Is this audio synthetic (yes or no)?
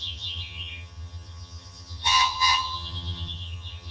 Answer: yes